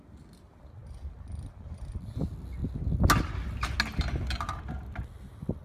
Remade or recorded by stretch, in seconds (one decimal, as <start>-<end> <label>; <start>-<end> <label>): 0.0-5.6 recorded